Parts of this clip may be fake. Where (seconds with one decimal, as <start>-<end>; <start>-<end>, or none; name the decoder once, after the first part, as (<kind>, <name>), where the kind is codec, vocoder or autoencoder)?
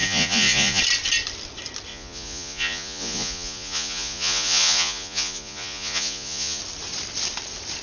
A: 0.0-0.8 (vocoder, Vocos); 1.9-6.6